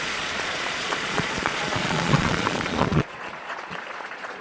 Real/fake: fake